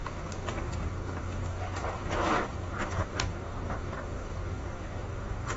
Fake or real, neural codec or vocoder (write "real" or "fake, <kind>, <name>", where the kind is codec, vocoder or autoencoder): fake, codec, DAC